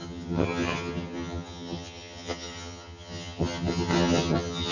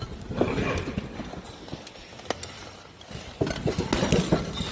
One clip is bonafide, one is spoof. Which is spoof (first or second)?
first